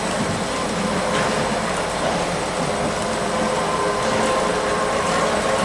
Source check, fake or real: real